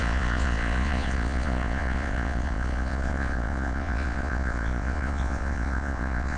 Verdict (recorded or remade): remade